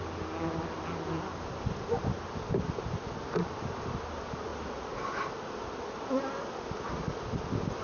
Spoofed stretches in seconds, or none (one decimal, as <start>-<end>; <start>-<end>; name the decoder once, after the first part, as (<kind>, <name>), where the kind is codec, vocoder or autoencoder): none